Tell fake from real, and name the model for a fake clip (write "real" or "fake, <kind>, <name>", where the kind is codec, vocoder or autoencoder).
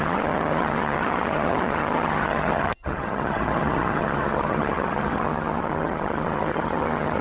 fake, vocoder, HiFi-GAN